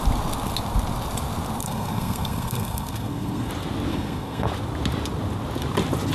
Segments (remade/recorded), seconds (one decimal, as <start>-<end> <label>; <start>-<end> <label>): 0.0-1.6 recorded; 1.6-3.5 remade; 3.5-3.9 recorded; 3.9-4.5 remade; 4.5-6.1 recorded